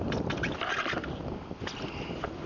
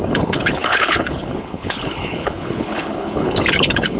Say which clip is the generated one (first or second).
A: second